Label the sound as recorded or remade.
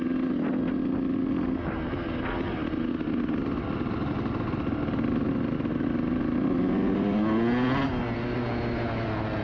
recorded